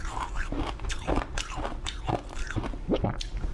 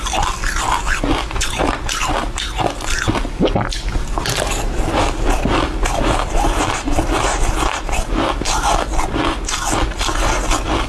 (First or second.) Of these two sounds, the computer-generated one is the first